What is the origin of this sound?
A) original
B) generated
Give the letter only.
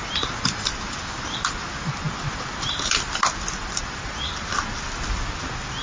A